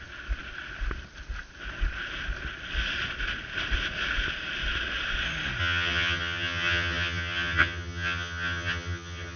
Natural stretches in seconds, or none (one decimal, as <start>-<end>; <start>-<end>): 0.0-5.6